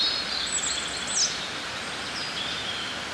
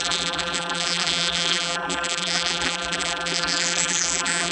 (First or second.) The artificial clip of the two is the second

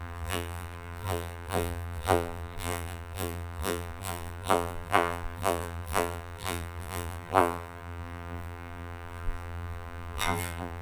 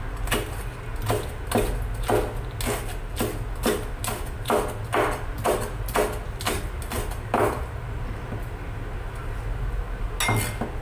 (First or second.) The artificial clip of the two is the first